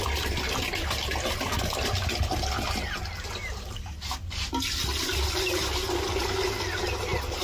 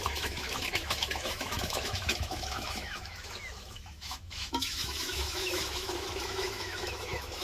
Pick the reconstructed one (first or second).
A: second